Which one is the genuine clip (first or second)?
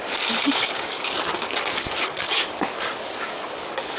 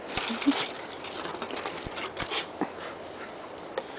second